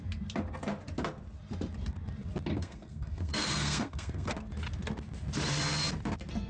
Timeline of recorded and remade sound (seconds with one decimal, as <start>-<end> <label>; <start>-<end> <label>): 0.0-2.5 recorded; 2.5-4.3 remade; 4.3-6.5 recorded